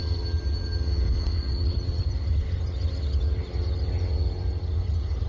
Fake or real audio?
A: real